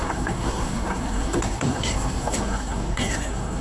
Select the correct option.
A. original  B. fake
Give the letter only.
B